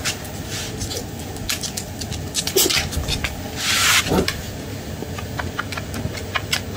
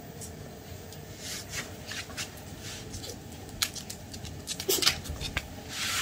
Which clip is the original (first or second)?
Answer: first